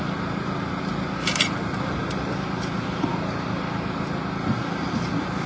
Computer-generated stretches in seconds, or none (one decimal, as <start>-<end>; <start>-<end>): none